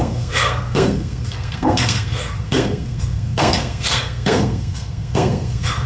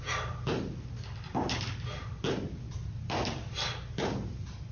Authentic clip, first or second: second